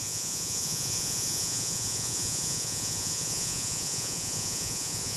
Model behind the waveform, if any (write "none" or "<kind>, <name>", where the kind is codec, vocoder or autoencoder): vocoder, Vocos